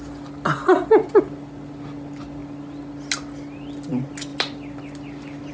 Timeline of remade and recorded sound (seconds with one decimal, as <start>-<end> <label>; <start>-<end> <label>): 0.0-5.5 recorded